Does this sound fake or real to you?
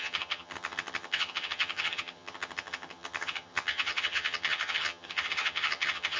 fake